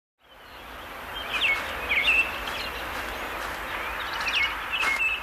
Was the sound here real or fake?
real